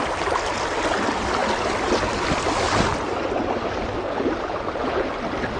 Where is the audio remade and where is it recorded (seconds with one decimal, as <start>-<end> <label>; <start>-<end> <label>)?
0.0-5.6 recorded